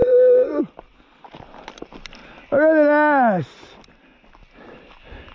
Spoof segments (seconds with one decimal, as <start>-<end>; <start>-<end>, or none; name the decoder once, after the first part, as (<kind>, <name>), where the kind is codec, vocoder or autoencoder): 0.0-0.6 (codec, ZipCodec)